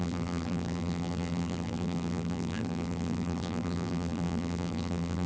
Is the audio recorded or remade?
remade